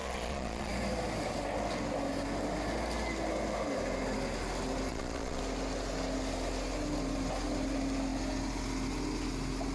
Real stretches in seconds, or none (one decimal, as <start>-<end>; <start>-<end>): 0.7-4.9; 5.4-9.7